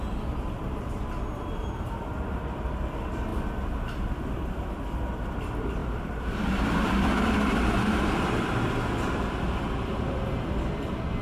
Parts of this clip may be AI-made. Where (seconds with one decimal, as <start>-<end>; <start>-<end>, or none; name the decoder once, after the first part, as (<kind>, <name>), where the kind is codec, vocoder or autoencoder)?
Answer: 5.8-8.1 (vocoder, BigVGAN v2)